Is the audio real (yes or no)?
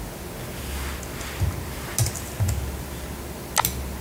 yes